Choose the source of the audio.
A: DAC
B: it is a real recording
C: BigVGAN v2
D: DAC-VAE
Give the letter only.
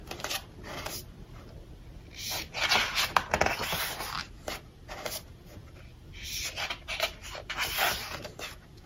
B